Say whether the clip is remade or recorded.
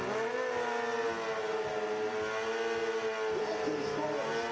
recorded